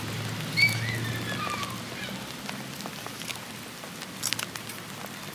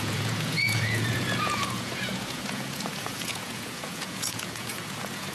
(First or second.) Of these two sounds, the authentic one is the first